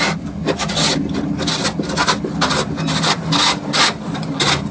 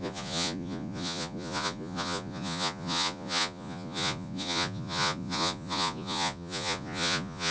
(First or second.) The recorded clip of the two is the first